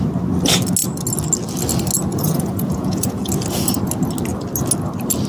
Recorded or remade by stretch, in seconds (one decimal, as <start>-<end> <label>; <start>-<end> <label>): 0.0-2.1 recorded; 2.1-3.3 remade; 3.3-5.3 recorded

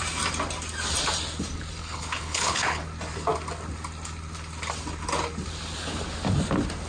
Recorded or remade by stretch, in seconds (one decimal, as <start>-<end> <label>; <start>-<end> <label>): 0.0-1.8 recorded; 1.8-2.8 remade; 2.8-6.9 recorded